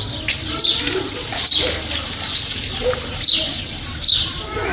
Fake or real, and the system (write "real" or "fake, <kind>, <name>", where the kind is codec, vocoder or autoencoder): real